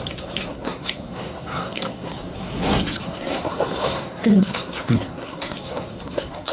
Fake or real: fake